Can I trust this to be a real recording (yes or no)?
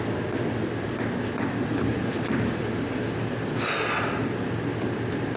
yes